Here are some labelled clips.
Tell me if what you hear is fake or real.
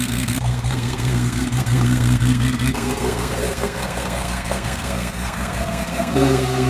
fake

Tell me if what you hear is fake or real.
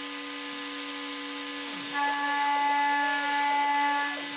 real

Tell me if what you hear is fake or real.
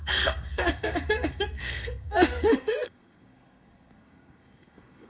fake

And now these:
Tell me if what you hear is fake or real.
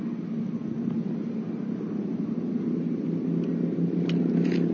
real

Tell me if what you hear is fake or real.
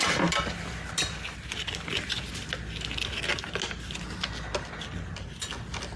real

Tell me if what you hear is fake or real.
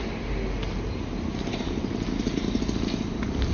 real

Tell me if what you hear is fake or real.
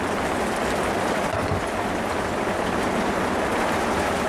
real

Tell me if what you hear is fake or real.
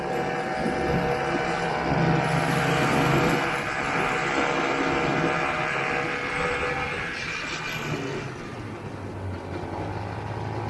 real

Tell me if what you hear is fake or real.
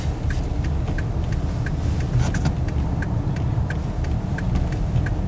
real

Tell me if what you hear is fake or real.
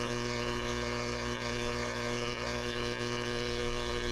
fake